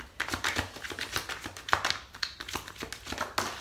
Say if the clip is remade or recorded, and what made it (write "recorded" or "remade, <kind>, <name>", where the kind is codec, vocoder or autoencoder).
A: recorded